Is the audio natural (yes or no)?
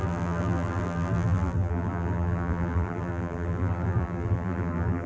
no